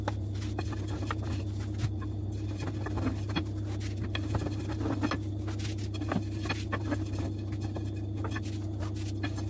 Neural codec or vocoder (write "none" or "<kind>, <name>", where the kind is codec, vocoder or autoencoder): none